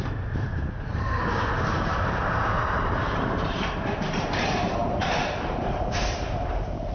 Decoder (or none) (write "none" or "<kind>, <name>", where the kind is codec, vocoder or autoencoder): vocoder, BigVGAN v2